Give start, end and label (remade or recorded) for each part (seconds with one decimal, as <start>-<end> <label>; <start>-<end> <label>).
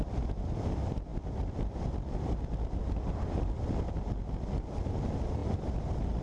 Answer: 0.0-1.1 recorded; 1.1-4.2 remade; 4.2-6.2 recorded